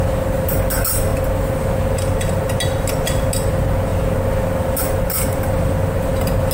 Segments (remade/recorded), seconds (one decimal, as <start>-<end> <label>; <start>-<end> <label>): 0.0-6.5 recorded